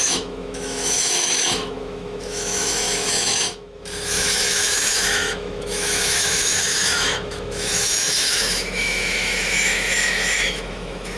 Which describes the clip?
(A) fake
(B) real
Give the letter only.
A